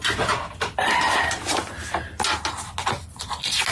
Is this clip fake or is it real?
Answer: real